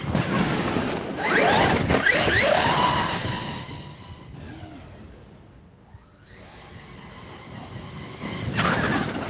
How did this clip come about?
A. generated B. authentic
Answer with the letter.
B